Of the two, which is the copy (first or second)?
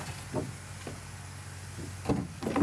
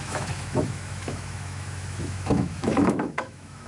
second